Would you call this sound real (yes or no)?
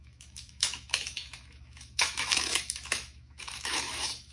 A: no